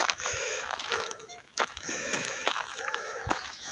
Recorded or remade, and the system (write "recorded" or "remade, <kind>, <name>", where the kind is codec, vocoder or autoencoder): remade, autoencoder, DAC-VAE